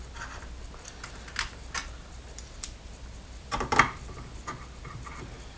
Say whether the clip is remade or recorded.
recorded